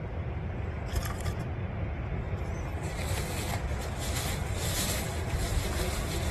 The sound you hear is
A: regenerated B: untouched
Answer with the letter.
B